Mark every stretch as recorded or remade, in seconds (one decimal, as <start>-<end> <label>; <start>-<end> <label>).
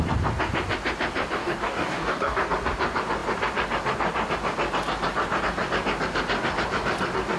0.0-1.4 recorded; 1.4-2.4 remade; 2.4-7.4 recorded